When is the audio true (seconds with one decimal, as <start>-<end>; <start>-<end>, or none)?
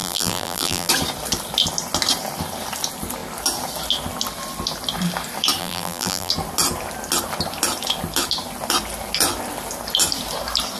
0.9-5.6; 6.3-10.8